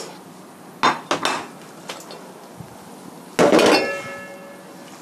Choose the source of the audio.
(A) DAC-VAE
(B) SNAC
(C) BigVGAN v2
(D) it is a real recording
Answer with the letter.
D